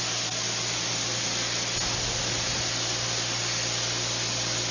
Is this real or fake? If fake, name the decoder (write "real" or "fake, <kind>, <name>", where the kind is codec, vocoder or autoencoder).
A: real